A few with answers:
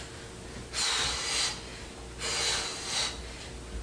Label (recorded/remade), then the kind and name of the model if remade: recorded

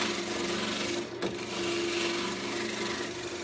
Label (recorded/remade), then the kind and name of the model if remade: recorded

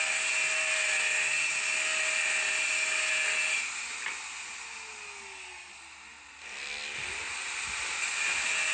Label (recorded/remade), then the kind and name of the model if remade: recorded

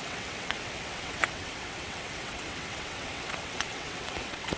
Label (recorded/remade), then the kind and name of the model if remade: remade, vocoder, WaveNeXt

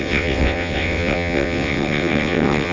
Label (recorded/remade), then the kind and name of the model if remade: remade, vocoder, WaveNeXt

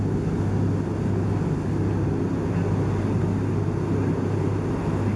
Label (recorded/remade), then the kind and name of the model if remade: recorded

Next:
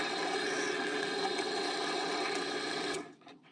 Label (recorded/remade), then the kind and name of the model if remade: remade, vocoder, WaveNeXt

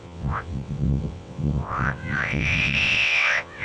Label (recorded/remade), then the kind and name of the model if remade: remade, vocoder, WaveNeXt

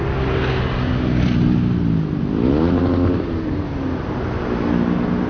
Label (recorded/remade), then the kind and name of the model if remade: recorded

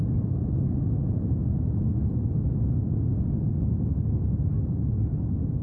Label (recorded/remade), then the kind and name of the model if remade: recorded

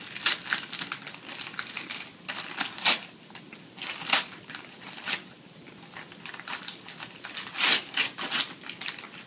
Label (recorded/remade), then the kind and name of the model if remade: recorded